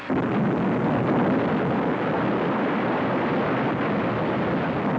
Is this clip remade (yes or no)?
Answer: no